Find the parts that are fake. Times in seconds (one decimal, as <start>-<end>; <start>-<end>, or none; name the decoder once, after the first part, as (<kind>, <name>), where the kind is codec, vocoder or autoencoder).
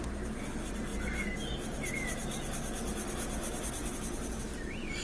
none